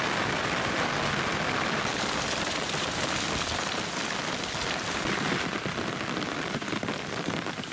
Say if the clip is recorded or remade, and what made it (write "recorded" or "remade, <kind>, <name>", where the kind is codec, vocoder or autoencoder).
remade, vocoder, BigVGAN v2